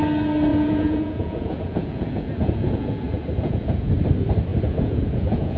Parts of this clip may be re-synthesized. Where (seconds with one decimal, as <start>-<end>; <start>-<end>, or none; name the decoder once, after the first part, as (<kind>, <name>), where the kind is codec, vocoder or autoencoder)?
0.5-3.9 (vocoder, Vocos); 4.5-5.6